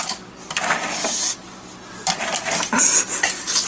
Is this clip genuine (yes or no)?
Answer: yes